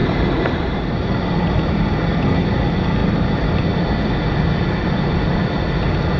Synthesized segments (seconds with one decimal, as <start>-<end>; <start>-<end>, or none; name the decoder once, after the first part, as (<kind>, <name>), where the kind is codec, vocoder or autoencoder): 0.0-1.7 (vocoder, BigVGAN v2); 3.0-3.6